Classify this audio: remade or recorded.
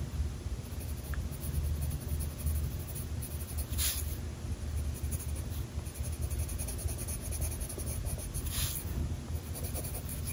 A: recorded